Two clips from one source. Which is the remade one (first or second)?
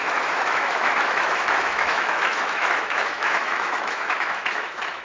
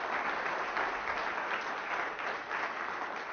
first